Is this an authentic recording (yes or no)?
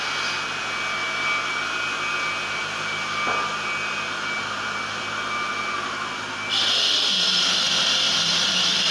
yes